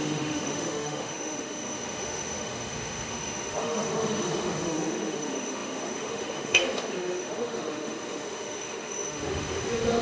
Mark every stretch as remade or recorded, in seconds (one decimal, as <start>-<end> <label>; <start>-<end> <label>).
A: 0.0-10.0 remade